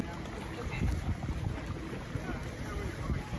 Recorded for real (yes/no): yes